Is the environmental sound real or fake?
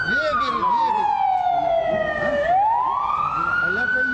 real